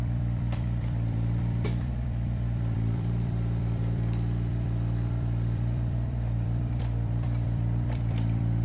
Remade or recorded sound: remade